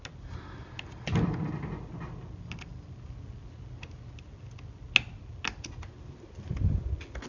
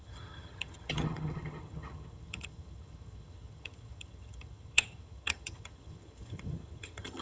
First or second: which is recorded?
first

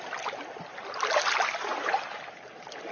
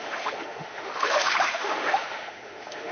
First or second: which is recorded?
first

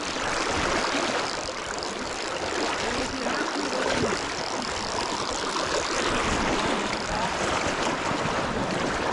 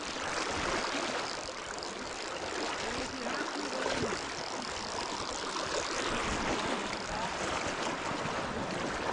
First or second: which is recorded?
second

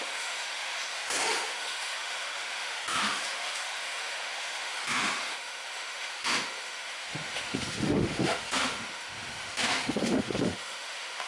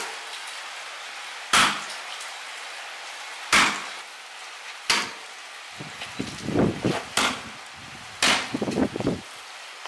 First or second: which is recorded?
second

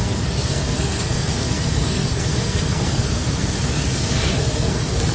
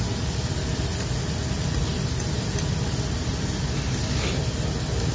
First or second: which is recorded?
second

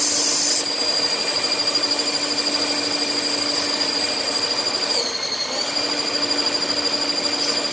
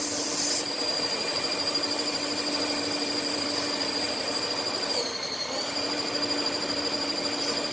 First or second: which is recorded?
first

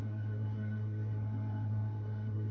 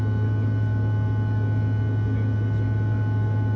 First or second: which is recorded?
second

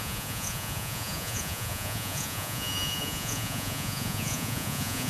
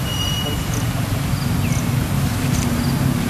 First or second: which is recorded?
second